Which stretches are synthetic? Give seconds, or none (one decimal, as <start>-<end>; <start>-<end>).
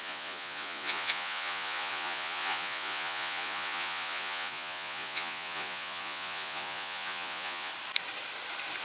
0.0-7.7